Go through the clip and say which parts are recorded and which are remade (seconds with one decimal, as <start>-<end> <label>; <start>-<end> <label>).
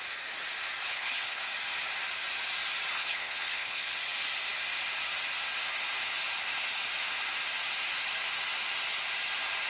0.0-0.9 recorded; 0.9-1.4 remade; 1.4-2.9 recorded; 2.9-4.0 remade; 4.0-9.7 recorded